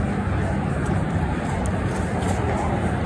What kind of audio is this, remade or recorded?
remade